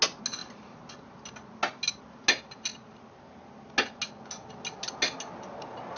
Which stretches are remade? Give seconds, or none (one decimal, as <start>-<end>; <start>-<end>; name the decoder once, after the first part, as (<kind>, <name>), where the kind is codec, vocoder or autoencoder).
none